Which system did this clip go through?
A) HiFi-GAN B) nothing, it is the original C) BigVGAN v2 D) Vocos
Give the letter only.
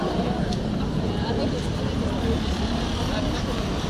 B